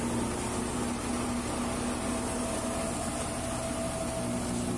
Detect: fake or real real